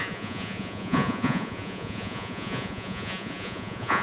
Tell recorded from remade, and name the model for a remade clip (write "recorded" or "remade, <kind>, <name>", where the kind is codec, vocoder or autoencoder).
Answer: remade, vocoder, Vocos